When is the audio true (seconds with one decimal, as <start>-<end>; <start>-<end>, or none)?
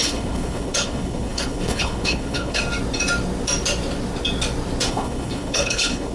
2.6-4.9